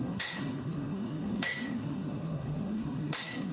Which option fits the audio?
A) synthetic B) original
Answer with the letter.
A